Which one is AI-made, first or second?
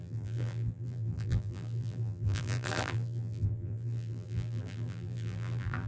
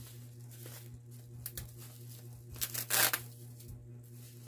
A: first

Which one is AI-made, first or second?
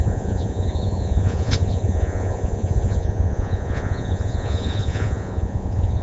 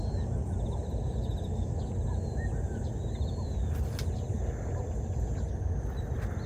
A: first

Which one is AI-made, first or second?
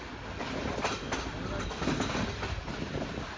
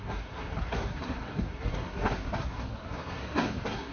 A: second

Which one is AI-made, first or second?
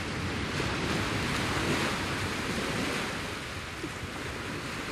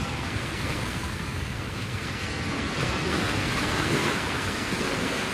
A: second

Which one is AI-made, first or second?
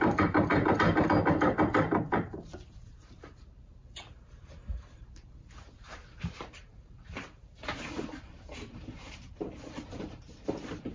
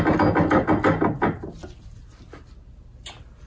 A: first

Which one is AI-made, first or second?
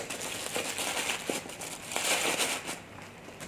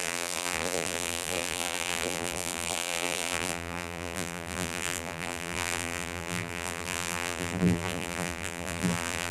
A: second